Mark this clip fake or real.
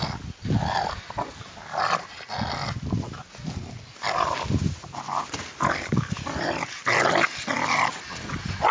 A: real